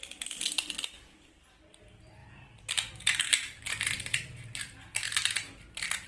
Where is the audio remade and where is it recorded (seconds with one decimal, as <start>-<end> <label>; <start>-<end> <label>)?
0.0-6.1 recorded

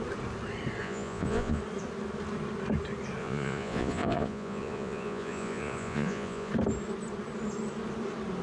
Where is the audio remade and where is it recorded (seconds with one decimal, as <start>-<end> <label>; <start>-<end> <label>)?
0.0-0.8 recorded; 0.8-1.6 remade; 1.6-3.2 recorded; 3.2-6.5 remade; 6.5-8.4 recorded